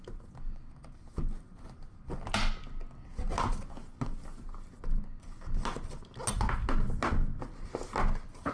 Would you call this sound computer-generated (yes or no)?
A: no